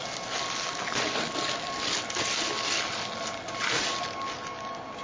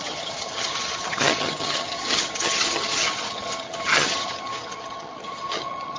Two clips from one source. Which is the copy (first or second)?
second